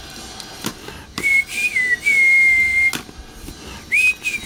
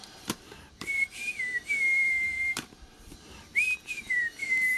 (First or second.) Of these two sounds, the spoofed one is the second